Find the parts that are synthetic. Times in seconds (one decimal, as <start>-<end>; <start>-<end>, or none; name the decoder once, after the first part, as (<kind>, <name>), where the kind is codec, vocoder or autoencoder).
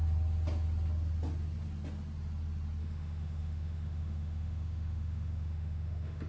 2.8-6.3 (autoencoder, DAC-VAE)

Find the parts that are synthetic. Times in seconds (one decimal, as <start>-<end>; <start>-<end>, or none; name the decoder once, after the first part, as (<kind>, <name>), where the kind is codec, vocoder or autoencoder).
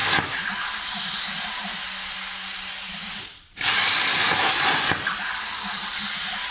none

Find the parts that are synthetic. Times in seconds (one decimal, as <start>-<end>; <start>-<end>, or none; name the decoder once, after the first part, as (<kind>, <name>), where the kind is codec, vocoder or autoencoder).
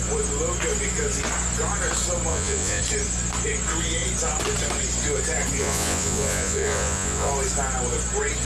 2.3-2.8 (vocoder, Vocos); 5.6-7.3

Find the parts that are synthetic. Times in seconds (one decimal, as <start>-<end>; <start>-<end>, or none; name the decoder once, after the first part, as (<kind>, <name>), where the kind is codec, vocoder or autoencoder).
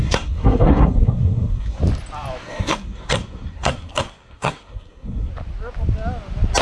0.0-1.8 (codec, SNAC); 2.4-5.3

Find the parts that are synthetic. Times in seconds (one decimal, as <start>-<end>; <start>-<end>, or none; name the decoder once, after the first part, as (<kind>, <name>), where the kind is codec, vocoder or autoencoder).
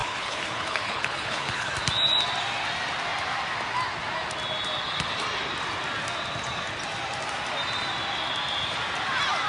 0.0-1.7 (codec, HILCodec)